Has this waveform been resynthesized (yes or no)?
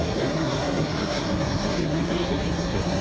yes